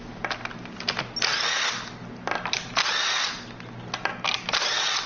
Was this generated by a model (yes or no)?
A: no